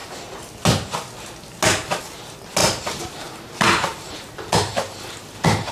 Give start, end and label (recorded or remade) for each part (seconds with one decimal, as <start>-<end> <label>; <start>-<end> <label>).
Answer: 0.0-2.6 recorded; 2.6-5.7 remade

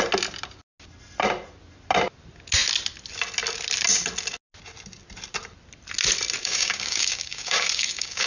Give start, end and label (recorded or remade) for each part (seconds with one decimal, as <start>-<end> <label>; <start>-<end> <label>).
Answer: 0.0-6.4 recorded; 6.4-8.3 remade

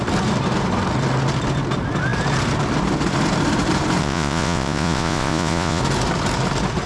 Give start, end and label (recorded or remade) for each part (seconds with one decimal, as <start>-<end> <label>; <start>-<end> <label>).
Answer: 0.0-4.0 recorded; 4.0-5.8 remade; 5.8-6.9 recorded

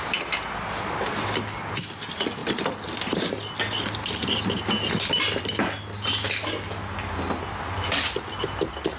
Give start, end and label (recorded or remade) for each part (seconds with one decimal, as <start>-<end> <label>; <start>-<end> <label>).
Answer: 0.0-9.0 recorded

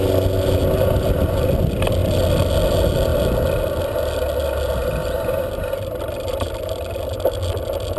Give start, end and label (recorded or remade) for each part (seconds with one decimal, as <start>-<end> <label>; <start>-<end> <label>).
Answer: 0.0-8.0 recorded

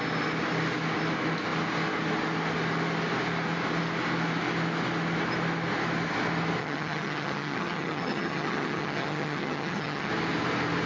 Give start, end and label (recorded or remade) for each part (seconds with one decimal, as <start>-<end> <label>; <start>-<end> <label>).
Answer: 0.0-6.6 recorded; 6.6-10.1 remade; 10.1-10.9 recorded

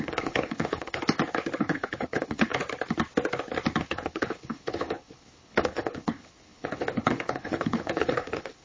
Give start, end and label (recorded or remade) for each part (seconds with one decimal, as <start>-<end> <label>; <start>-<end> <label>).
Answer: 0.0-1.0 remade; 1.0-1.6 recorded; 1.6-2.5 remade; 2.5-3.8 recorded; 3.8-8.6 remade

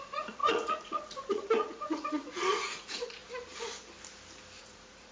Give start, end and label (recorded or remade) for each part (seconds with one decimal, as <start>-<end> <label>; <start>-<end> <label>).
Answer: 0.0-3.2 remade; 3.2-4.6 recorded; 4.6-5.1 remade